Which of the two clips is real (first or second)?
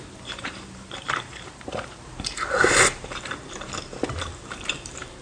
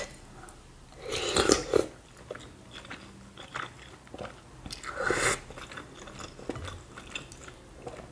second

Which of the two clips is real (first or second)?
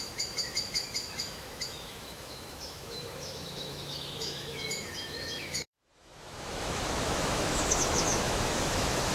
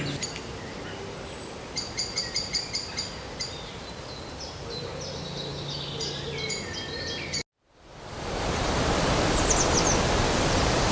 second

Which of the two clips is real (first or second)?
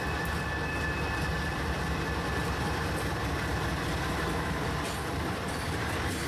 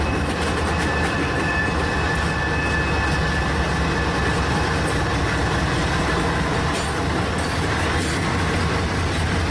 second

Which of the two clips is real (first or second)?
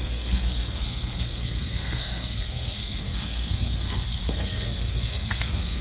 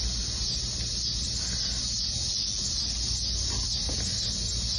second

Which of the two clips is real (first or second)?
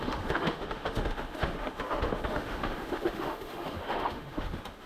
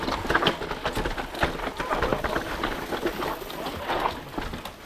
second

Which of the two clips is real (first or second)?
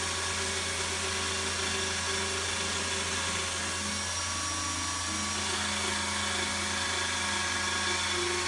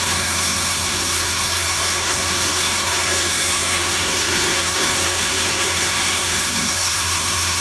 first